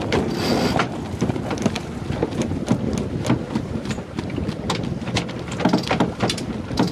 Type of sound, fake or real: real